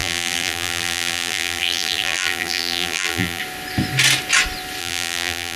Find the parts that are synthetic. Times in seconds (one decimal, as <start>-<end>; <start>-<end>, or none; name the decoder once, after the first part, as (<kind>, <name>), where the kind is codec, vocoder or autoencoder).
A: 0.0-3.4 (vocoder, BigVGAN v2); 4.8-5.6